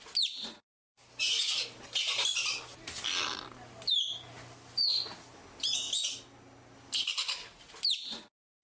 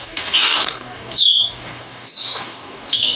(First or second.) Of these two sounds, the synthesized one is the second